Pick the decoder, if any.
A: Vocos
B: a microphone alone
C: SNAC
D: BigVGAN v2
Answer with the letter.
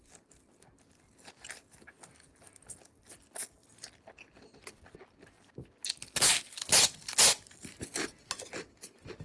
B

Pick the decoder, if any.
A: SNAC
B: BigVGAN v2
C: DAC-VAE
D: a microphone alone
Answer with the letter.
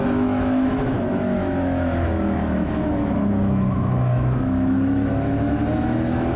C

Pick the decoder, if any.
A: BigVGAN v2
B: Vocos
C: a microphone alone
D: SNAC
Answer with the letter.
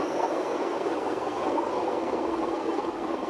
D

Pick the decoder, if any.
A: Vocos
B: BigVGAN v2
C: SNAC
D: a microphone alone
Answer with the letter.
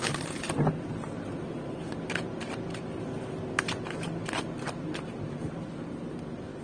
D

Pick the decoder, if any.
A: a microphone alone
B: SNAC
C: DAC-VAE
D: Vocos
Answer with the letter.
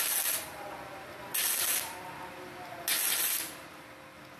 A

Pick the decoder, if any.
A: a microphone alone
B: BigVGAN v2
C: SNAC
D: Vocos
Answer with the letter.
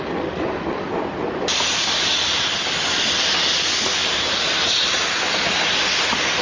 A